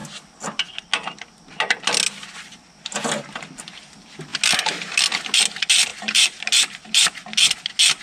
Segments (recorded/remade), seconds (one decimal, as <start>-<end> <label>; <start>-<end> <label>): 0.0-5.9 recorded; 5.9-6.4 remade; 6.4-8.0 recorded